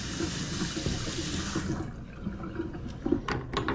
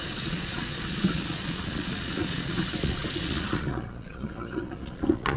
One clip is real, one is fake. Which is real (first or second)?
first